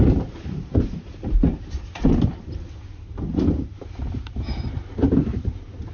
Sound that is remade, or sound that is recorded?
remade